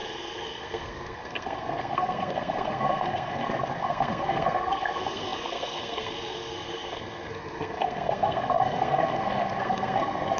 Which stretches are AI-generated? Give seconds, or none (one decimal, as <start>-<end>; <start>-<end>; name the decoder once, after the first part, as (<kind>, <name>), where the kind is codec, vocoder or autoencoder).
0.0-10.4 (codec, SNAC)